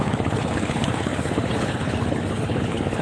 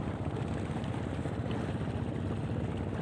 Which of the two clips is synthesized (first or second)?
first